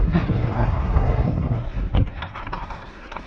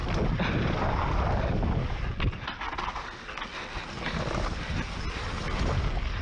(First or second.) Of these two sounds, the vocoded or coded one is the first